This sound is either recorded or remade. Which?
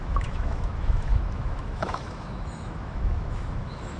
remade